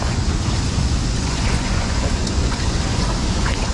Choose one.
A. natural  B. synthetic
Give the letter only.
B